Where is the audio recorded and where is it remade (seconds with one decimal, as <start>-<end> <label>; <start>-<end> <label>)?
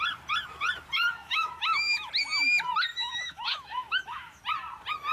0.0-1.2 recorded; 1.2-2.1 remade; 2.1-2.9 recorded; 2.9-4.4 remade; 4.4-5.1 recorded